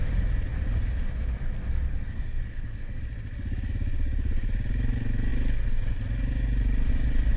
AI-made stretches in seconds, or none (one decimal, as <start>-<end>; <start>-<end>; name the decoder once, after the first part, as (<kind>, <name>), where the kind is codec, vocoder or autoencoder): 1.9-3.0 (codec, SNAC)